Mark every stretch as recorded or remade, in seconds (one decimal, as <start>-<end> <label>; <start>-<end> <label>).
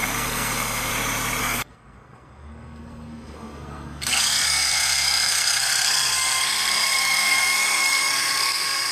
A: 0.0-0.9 remade; 0.9-1.4 recorded; 1.4-8.9 remade